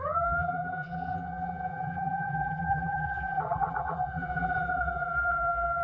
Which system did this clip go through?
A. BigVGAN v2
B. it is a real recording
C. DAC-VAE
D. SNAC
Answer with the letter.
A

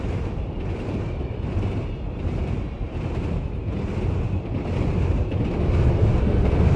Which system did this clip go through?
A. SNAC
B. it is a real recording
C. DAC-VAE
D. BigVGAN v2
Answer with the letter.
B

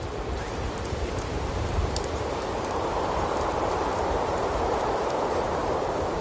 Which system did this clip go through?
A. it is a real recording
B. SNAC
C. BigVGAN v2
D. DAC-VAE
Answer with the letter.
C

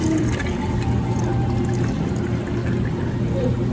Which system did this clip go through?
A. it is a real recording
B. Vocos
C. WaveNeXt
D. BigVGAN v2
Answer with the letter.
A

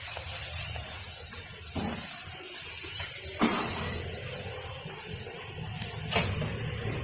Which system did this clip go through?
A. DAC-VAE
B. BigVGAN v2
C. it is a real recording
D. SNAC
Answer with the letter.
C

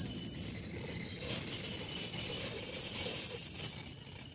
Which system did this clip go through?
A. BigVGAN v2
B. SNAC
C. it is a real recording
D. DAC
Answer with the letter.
C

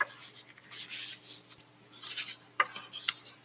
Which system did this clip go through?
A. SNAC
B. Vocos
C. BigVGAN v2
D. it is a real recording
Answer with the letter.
D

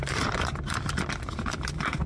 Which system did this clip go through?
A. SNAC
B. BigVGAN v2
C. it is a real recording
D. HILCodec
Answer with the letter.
B